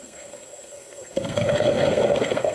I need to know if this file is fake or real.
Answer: fake